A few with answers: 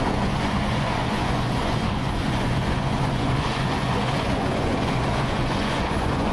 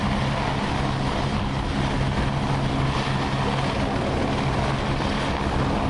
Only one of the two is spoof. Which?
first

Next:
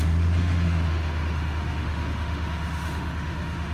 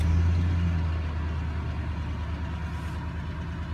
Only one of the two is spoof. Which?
first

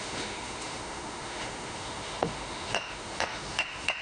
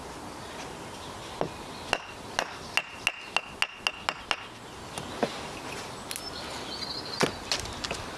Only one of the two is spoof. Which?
first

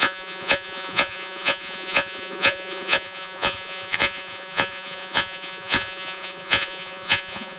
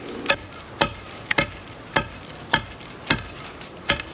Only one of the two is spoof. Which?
first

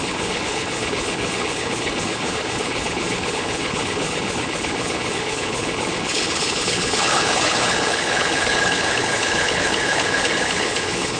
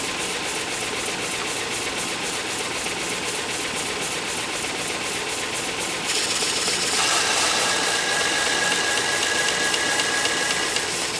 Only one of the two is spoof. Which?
first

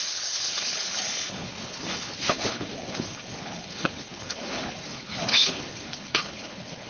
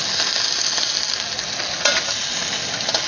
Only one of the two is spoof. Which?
first